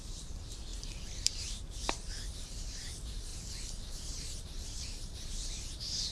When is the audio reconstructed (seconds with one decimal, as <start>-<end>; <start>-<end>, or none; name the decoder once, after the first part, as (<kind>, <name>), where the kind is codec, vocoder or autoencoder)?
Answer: 0.0-3.3 (vocoder, BigVGAN v2); 3.9-6.1